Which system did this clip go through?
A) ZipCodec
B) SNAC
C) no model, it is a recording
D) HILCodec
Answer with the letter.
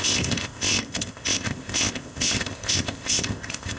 A